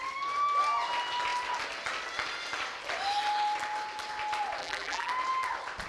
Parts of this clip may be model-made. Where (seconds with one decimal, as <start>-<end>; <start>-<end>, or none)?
4.6-5.1